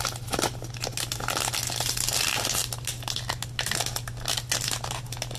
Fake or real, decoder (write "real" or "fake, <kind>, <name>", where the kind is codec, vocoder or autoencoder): real